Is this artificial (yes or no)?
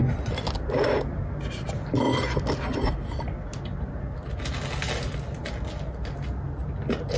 no